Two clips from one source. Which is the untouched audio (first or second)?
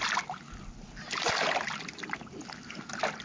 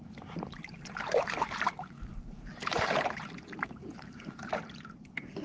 first